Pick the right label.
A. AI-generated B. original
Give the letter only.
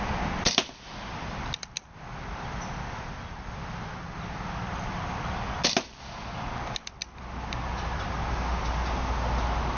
B